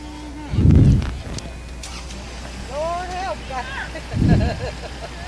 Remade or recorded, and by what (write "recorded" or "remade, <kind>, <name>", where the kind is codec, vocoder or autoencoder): recorded